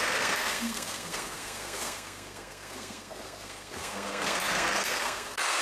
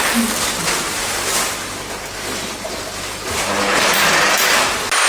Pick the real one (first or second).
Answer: second